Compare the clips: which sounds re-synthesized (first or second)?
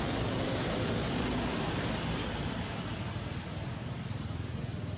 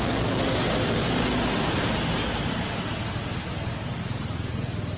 first